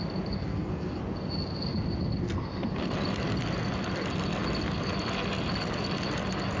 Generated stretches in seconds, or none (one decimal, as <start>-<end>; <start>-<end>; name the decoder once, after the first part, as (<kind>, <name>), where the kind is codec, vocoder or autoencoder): 0.4-1.0 (codec, SNAC)